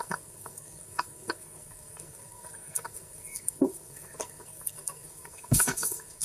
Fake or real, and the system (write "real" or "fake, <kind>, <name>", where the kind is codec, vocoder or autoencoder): fake, codec, SNAC